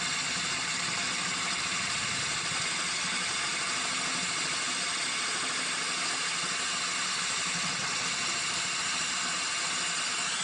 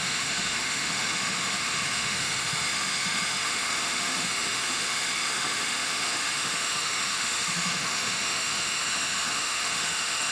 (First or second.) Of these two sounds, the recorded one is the first